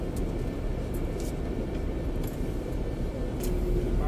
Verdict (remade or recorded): recorded